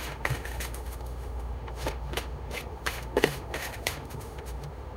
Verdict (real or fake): fake